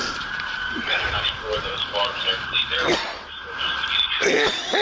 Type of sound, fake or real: fake